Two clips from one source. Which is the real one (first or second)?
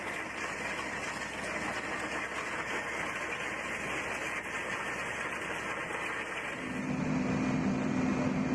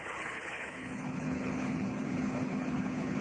first